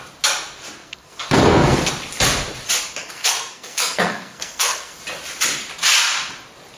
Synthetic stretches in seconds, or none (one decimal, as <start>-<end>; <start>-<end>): 0.8-1.9; 3.0-5.0

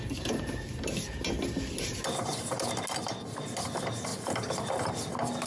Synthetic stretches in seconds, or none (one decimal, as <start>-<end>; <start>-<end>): none